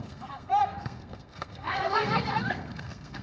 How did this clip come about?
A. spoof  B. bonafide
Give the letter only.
A